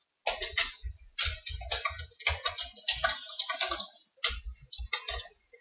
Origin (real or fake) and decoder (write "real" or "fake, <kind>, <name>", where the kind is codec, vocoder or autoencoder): real